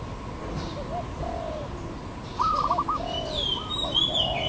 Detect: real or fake real